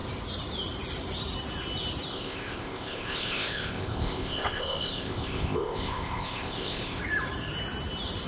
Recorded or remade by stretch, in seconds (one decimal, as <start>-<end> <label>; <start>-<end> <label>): 0.0-2.1 recorded; 2.1-7.0 remade; 7.0-8.3 recorded